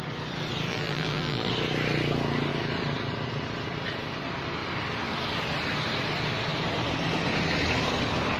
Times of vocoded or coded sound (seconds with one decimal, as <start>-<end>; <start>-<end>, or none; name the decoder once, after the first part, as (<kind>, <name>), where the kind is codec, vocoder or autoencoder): 0.7-1.5 (vocoder, BigVGAN v2)